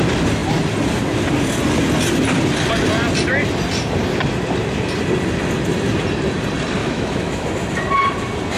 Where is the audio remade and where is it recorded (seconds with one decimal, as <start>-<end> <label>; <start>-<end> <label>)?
0.0-6.8 recorded; 6.8-7.5 remade; 7.5-8.6 recorded

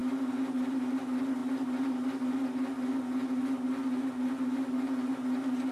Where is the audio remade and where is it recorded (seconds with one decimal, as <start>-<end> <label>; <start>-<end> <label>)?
0.0-5.7 recorded

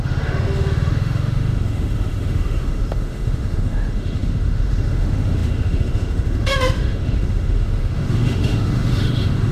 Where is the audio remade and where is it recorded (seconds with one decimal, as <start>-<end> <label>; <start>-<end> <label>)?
0.0-9.5 remade

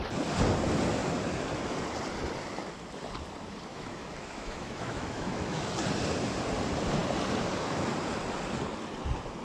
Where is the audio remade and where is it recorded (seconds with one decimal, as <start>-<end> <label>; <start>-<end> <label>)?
0.0-3.7 recorded; 3.7-5.7 remade; 5.7-9.4 recorded